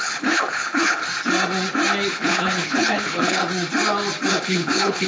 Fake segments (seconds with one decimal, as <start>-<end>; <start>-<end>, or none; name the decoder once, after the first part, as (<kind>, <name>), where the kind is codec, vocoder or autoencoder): 0.0-1.0 (codec, HILCodec); 2.1-3.4; 4.3-5.1

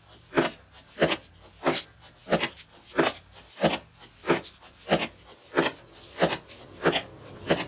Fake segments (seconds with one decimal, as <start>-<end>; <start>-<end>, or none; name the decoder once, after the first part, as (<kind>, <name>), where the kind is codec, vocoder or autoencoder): none

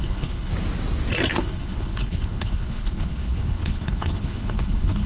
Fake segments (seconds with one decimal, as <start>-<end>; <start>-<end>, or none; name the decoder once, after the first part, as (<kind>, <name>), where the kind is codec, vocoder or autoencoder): 0.0-0.5 (codec, HILCodec); 1.4-5.1

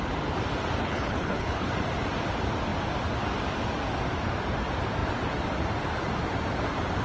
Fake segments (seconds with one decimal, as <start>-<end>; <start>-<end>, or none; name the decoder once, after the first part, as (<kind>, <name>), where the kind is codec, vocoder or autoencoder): 0.8-1.7 (codec, HILCodec)

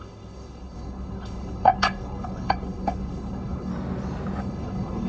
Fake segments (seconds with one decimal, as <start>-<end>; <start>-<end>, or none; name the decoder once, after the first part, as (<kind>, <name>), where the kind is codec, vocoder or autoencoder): 0.0-3.7 (codec, HILCodec); 4.4-5.1

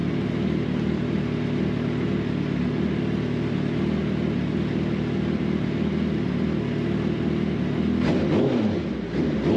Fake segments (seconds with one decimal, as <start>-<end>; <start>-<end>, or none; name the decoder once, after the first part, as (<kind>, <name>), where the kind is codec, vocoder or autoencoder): none

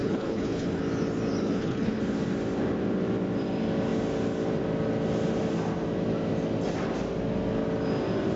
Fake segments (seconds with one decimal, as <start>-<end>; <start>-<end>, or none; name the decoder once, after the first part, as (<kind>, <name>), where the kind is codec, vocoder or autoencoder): 0.0-0.8 (codec, HILCodec); 1.4-2.0

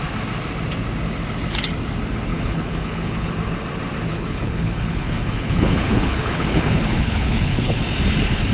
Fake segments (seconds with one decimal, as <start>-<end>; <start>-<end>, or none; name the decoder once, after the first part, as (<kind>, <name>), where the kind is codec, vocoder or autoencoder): 2.3-3.3 (codec, HILCodec); 4.1-7.8